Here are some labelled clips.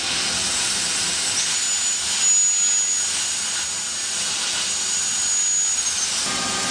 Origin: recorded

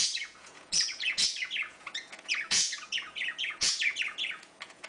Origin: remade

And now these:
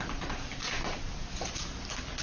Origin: recorded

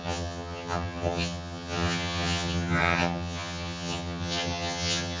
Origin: remade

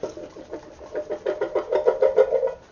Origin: recorded